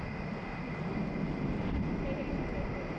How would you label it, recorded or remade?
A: recorded